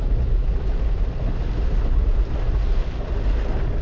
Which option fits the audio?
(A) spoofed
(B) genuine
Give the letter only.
B